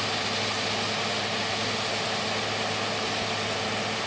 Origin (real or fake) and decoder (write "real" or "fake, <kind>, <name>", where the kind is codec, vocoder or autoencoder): real